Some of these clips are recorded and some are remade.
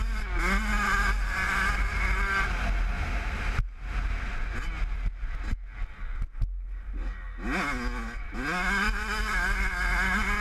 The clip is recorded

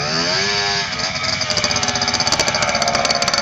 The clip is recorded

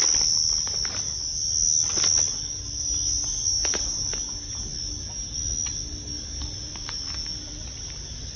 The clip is recorded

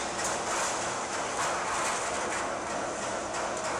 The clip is recorded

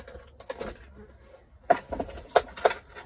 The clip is recorded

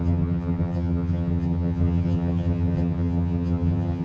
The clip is remade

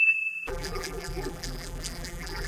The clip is remade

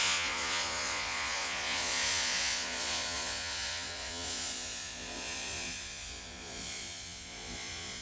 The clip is remade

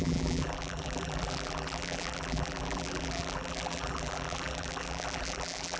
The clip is remade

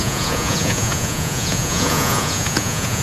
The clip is remade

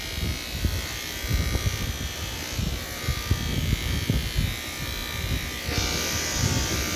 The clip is recorded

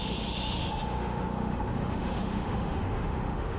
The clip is remade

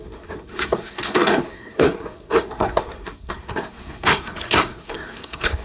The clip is remade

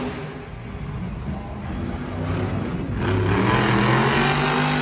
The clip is recorded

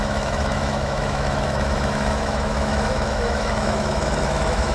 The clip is remade